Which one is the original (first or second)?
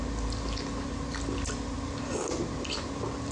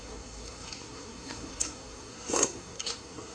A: first